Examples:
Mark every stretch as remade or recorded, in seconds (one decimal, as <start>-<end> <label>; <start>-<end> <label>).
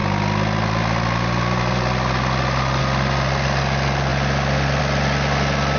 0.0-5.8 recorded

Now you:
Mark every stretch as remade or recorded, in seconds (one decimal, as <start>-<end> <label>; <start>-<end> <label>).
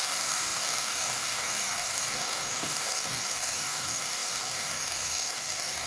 0.0-5.9 remade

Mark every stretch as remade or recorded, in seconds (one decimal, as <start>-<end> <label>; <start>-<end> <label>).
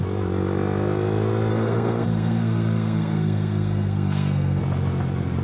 0.0-1.5 recorded; 1.5-4.6 remade; 4.6-5.4 recorded